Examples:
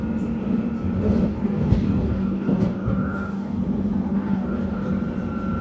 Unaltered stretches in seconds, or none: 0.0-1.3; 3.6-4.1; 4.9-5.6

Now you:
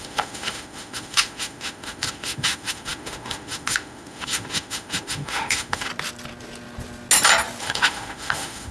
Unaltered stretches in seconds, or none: 5.9-7.6

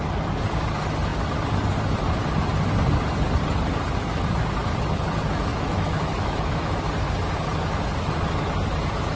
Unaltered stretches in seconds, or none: 0.0-5.5; 6.8-9.2

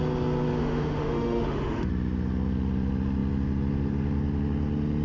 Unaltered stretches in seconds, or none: 0.0-0.6; 1.9-5.0

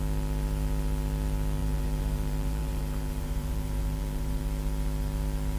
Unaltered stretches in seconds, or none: 0.0-1.6; 4.4-5.6